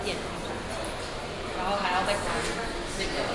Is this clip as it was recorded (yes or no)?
yes